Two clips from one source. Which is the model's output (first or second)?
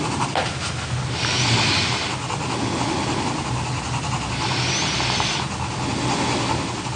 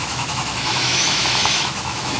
second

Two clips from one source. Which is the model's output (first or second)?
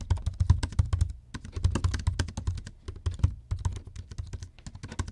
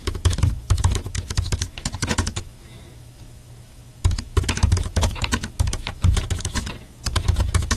second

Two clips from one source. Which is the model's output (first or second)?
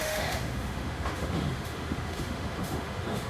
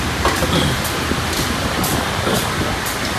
first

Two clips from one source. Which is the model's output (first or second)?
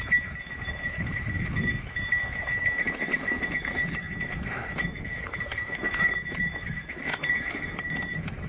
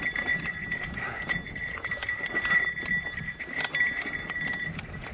first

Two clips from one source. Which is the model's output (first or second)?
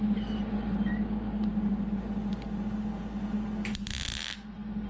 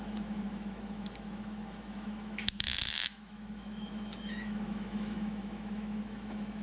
second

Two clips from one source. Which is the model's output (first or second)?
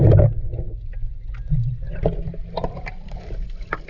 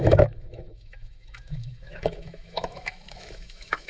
second